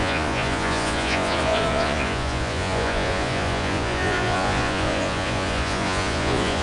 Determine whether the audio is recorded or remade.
remade